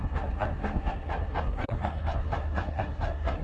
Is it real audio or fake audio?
fake